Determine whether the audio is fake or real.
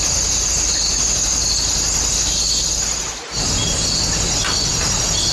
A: real